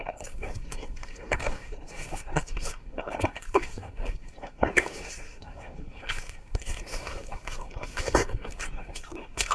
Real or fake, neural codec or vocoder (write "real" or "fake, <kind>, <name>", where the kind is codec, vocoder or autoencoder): fake, codec, SNAC